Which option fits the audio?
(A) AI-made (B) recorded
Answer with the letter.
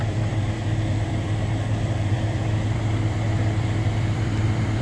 A